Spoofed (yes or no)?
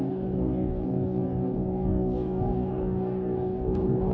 yes